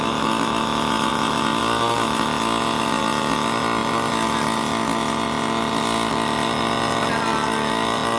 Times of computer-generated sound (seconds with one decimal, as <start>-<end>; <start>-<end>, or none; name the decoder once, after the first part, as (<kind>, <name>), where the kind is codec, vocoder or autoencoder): none